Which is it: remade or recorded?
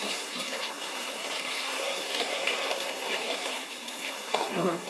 remade